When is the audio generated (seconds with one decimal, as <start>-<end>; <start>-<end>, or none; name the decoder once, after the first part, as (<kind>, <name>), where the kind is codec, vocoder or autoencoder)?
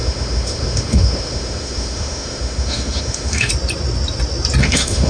0.0-3.5 (autoencoder, DAC-VAE); 4.6-5.1